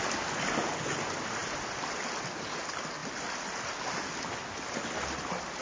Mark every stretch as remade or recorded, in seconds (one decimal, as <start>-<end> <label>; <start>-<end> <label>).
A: 0.0-5.6 recorded